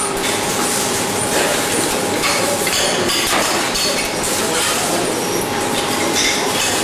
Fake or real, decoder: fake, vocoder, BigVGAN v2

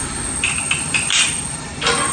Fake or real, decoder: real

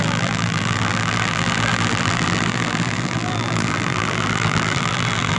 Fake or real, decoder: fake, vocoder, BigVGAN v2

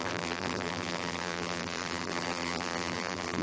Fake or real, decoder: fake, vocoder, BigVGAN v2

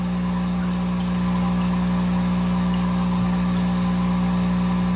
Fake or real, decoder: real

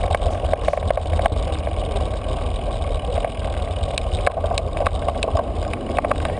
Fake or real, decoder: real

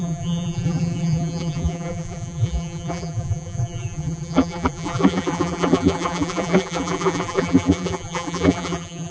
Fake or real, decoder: fake, vocoder, BigVGAN v2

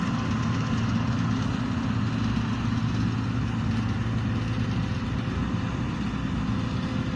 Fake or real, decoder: real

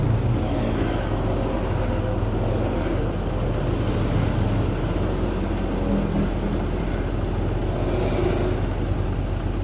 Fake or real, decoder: real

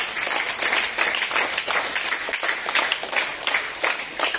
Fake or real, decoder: real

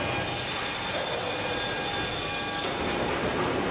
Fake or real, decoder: real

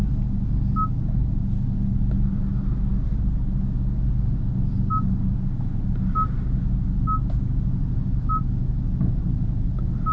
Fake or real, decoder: real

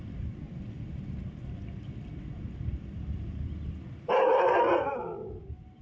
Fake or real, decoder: fake, vocoder, BigVGAN v2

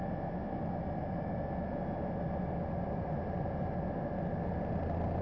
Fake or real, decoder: real